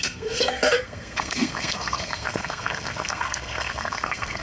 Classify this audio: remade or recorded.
remade